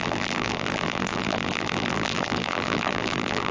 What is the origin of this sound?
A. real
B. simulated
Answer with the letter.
B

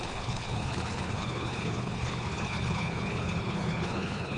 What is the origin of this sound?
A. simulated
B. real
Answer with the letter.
A